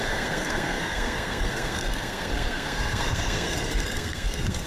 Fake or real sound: fake